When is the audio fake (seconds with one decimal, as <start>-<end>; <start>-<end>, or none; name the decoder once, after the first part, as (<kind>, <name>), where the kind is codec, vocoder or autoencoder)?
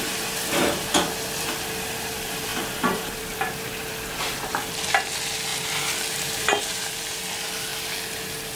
0.0-7.7 (vocoder, BigVGAN v2)